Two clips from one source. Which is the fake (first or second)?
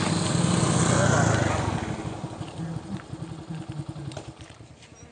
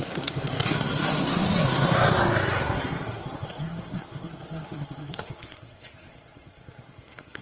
second